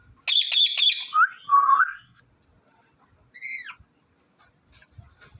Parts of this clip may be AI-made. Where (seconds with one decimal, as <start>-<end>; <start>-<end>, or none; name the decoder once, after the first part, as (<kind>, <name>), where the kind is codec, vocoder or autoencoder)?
1.5-2.2 (codec, SNAC)